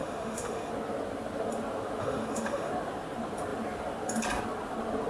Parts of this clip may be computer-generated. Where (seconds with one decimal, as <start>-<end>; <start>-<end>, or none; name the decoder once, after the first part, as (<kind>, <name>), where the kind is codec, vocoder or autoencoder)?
0.0-0.7 (autoencoder, DAC-VAE); 2.0-2.7